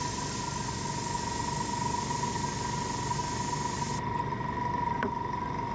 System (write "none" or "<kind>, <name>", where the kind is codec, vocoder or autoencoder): none